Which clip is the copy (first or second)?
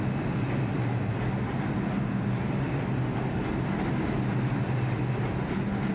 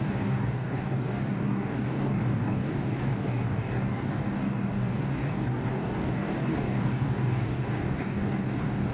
second